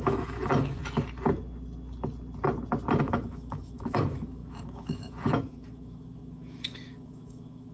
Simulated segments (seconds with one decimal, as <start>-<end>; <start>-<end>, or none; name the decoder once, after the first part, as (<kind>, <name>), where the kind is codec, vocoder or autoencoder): 0.0-0.8 (autoencoder, DAC-VAE); 3.0-7.7